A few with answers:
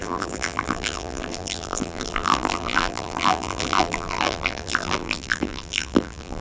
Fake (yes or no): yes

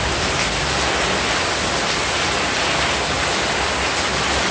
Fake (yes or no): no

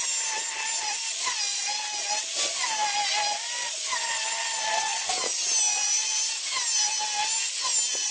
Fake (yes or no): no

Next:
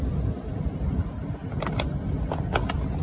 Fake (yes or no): no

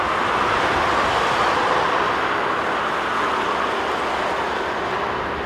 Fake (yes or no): no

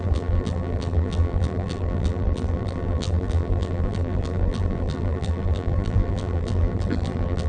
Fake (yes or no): yes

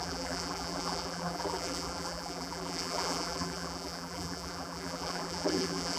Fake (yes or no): yes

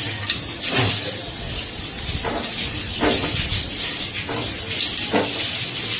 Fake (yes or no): no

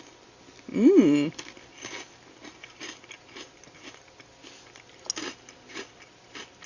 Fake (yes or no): no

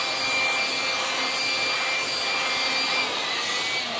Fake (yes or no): no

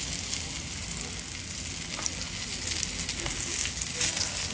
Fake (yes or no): no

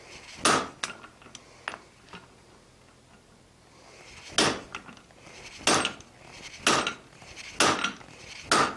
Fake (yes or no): no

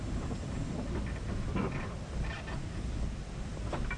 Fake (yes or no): yes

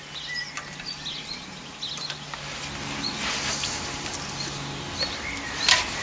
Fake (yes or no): no